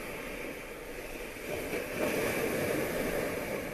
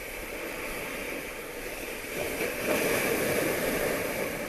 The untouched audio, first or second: first